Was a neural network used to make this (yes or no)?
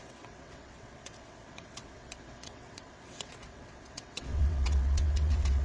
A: yes